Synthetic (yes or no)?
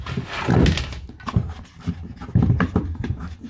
no